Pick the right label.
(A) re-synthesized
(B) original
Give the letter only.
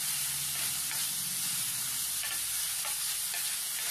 B